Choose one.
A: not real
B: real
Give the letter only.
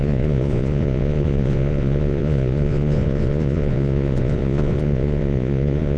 A